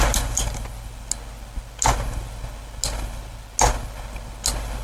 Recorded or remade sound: recorded